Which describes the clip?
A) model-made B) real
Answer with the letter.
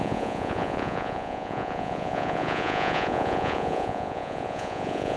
A